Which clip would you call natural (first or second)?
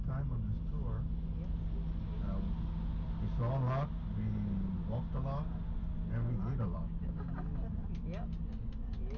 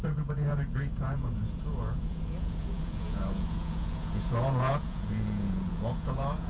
first